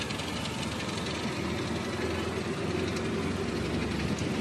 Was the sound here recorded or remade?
recorded